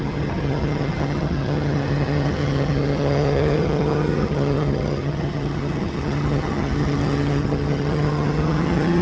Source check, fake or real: fake